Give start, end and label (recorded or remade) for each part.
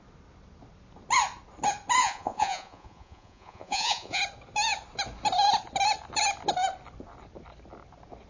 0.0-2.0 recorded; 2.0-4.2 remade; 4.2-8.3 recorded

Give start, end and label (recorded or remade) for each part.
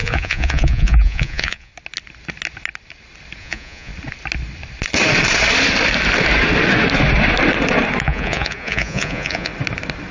0.0-1.7 remade; 1.7-3.4 recorded; 3.4-3.9 remade; 3.9-8.0 recorded; 8.0-9.5 remade; 9.5-10.1 recorded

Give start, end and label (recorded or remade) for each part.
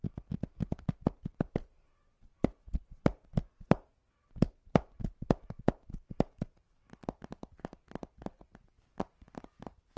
0.0-1.0 recorded; 1.0-1.5 remade; 1.5-7.0 recorded; 7.0-9.6 remade; 9.6-10.0 recorded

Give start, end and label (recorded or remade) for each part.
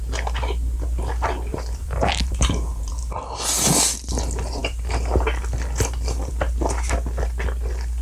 0.0-1.5 recorded; 1.5-2.9 remade; 2.9-8.0 recorded